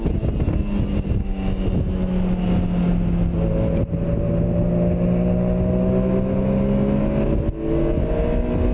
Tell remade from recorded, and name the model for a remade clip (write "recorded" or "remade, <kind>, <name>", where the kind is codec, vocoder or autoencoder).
recorded